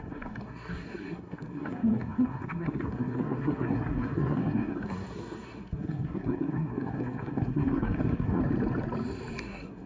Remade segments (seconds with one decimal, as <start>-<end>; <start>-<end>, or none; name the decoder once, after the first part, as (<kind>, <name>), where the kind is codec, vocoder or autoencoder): 0.0-8.4 (codec, SNAC); 9.4-9.9